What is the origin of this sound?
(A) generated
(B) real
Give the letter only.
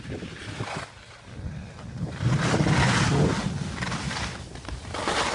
B